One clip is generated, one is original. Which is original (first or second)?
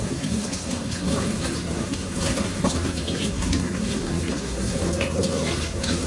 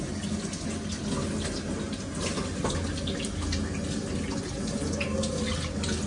second